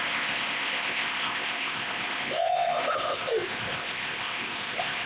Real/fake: fake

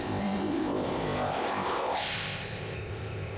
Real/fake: fake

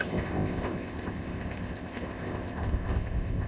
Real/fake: fake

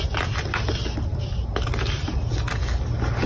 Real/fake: real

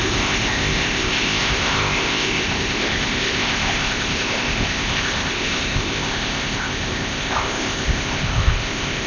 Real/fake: fake